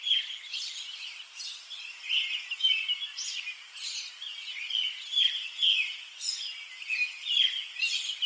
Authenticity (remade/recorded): recorded